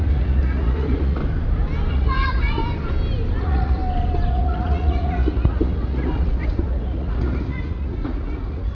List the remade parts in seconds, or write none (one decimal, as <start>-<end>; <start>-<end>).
0.0-1.2; 1.9-2.6; 3.4-3.8; 4.3-8.7